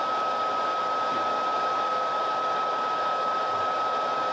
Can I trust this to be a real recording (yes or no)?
yes